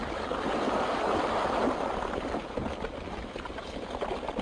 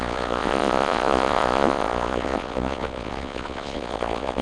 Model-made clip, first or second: second